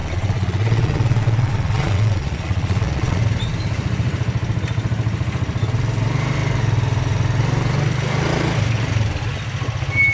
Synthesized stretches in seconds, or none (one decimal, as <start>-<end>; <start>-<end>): 0.0-3.2